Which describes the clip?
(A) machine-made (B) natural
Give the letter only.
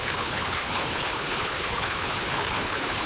A